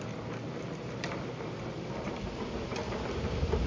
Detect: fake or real real